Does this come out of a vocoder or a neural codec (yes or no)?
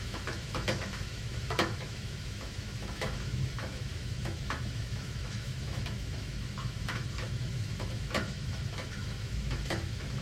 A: yes